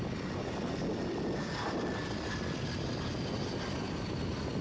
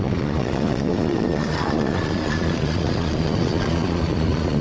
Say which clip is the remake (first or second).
second